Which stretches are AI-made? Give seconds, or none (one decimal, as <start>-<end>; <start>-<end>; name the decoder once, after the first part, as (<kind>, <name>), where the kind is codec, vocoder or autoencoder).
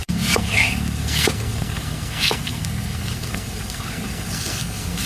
0.0-5.1 (codec, SNAC)